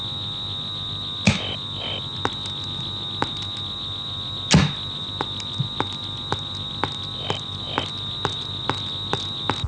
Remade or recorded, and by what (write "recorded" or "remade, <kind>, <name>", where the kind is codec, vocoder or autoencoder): recorded